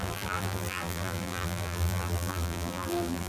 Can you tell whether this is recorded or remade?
remade